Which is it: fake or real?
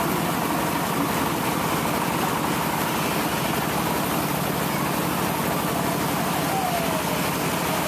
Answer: real